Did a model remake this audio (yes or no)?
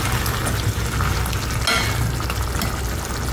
no